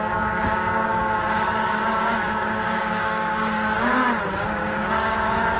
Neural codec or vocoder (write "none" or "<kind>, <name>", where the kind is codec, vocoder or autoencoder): codec, DAC